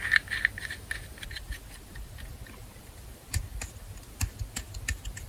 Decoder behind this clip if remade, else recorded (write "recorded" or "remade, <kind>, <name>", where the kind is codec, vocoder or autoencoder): remade, vocoder, BigVGAN v2